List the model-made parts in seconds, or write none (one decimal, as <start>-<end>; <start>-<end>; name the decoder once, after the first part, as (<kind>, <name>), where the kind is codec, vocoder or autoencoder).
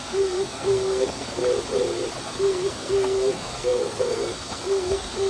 0.0-1.4 (codec, SNAC); 2.2-5.3